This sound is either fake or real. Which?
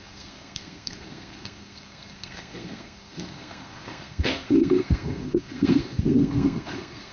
fake